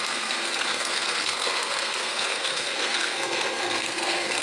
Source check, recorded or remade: remade